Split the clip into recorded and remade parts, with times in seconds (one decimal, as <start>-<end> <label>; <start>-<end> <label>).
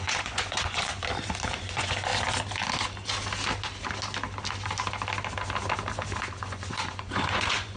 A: 0.0-0.9 remade; 0.9-1.6 recorded; 1.6-2.1 remade; 2.1-6.4 recorded; 6.4-7.8 remade